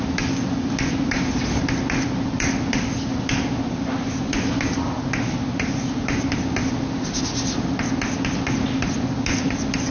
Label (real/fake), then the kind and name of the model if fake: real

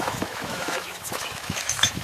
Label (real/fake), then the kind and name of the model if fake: fake, autoencoder, DAC-VAE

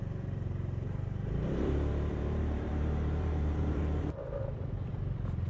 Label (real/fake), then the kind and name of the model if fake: fake, vocoder, BigVGAN v2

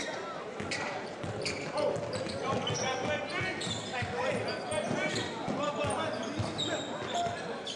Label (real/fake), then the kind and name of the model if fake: real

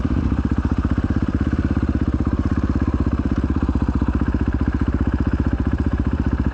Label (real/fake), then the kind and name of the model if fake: fake, vocoder, BigVGAN v2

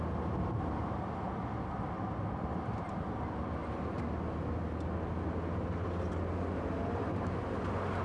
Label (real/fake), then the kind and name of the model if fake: real